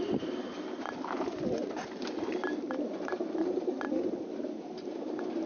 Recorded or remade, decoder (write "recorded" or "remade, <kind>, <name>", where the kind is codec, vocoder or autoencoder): recorded